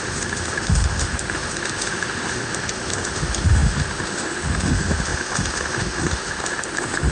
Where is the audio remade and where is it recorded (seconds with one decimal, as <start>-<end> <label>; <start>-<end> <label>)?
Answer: 0.0-7.1 remade